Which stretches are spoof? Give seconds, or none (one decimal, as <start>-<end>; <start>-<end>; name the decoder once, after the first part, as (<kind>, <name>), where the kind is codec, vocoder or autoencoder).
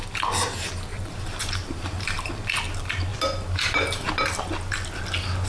0.9-2.3 (vocoder, BigVGAN v2); 3.1-4.1